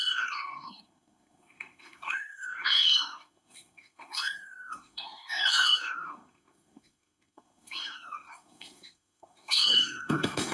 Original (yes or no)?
no